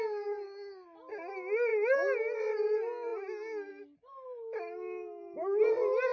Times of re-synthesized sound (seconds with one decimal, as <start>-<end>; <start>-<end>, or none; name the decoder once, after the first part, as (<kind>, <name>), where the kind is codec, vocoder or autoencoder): none